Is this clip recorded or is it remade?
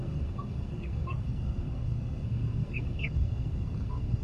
remade